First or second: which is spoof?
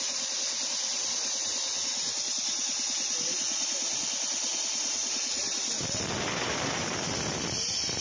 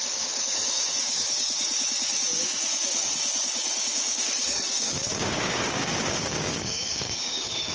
second